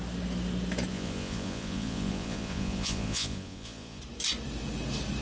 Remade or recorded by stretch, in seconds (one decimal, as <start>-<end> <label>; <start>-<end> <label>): 0.0-0.9 recorded; 0.9-4.0 remade; 4.0-5.2 recorded